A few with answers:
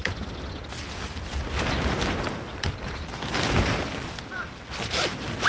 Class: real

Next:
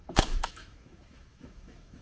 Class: fake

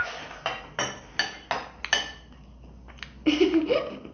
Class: real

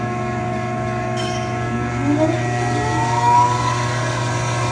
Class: fake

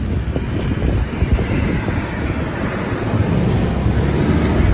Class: real